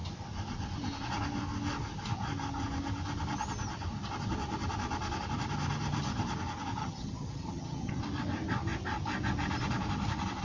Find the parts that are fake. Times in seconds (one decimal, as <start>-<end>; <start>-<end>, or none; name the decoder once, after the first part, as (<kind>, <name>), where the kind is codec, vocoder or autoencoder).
6.8-8.0 (vocoder, HiFi-GAN)